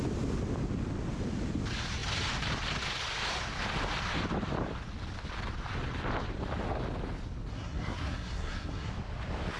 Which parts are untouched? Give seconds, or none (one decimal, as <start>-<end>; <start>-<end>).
0.0-7.5; 8.9-9.6